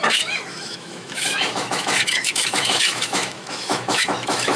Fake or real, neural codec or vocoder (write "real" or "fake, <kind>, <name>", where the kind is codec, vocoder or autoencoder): fake, autoencoder, DAC-VAE